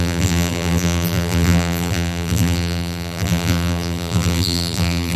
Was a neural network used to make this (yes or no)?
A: yes